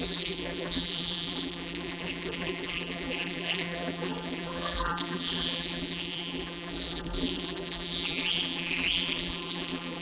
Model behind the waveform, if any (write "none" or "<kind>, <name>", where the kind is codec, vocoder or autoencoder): vocoder, BigVGAN v2